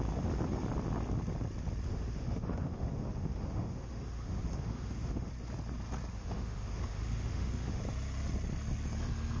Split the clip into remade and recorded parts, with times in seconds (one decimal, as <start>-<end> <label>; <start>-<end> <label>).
0.0-1.9 recorded; 1.9-5.3 remade; 5.3-6.1 recorded; 6.1-7.8 remade; 7.8-9.4 recorded